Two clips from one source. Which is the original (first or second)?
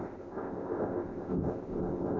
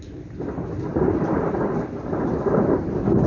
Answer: second